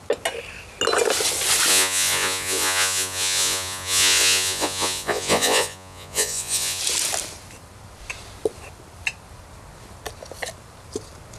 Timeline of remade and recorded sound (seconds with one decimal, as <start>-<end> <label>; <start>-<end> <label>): 0.0-1.7 recorded; 1.7-6.8 remade; 6.8-11.4 recorded